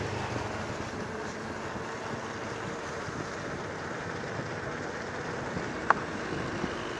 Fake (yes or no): no